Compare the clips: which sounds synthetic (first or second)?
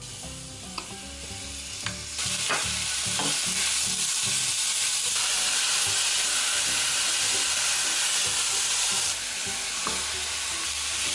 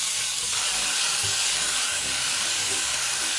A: second